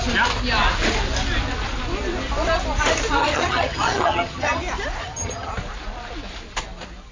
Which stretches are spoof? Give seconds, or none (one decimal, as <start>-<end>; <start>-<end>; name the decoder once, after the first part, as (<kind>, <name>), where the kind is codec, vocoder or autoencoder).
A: 3.2-4.6 (vocoder, HiFi-GAN); 5.0-5.5